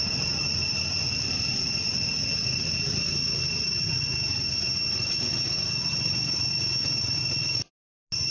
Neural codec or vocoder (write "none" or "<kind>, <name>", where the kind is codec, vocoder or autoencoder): none